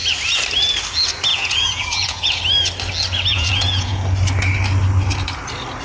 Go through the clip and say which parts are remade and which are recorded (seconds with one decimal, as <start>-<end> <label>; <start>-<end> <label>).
0.0-1.3 recorded; 1.3-2.4 remade; 2.4-3.3 recorded; 3.3-4.0 remade; 4.0-5.8 recorded